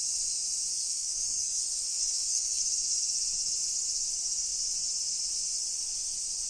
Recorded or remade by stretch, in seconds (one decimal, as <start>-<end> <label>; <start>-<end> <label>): 0.0-0.8 recorded; 0.8-2.6 remade; 2.6-6.5 recorded